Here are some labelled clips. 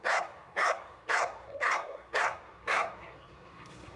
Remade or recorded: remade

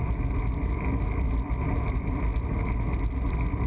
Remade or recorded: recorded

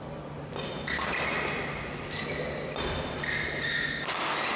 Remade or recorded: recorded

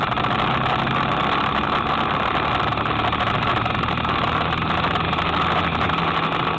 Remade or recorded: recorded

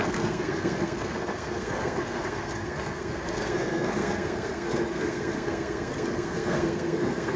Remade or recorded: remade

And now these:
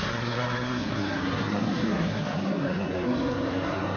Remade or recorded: remade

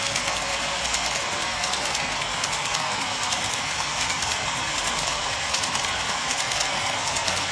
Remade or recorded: remade